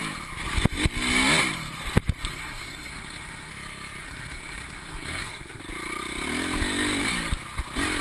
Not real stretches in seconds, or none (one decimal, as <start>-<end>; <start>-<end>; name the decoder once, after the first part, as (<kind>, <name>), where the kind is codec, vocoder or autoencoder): 2.3-3.5 (codec, SNAC); 4.0-5.6